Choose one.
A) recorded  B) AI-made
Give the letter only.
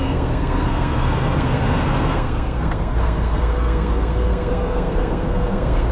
B